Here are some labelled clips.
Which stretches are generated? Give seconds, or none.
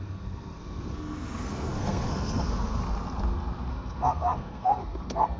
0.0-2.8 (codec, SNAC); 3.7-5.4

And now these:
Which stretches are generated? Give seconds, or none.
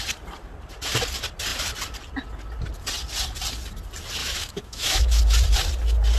4.2-5.2 (autoencoder, DAC-VAE)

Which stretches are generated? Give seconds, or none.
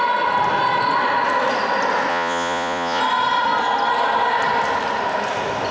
2.1-3.0 (vocoder, Vocos)